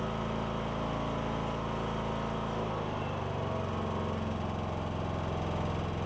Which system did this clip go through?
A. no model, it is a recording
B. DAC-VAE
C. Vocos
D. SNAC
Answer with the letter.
A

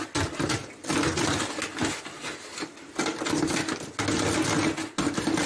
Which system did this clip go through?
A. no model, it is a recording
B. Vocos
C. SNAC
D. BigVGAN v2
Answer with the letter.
A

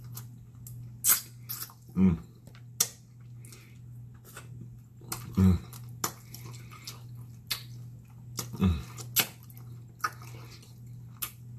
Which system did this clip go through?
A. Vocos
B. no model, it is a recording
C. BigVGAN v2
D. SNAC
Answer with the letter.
B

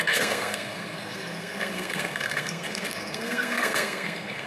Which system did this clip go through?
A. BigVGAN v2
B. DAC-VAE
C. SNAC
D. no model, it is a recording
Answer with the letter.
C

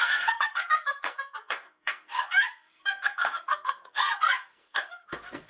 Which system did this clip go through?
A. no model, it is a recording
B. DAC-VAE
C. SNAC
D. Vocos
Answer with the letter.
C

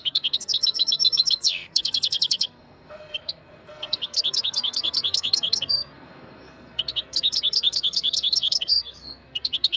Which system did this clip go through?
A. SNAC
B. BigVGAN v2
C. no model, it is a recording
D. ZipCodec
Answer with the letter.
A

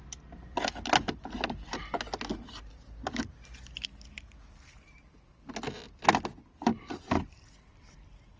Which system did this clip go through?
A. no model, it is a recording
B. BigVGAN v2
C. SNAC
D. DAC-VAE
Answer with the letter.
A